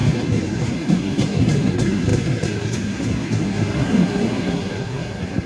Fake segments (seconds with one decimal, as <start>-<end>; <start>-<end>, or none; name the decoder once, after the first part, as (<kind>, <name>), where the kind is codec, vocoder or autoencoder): 0.0-5.5 (codec, SNAC)